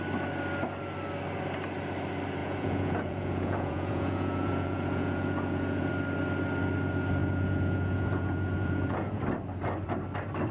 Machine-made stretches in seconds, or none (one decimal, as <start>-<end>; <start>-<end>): 2.4-5.9; 7.2-9.2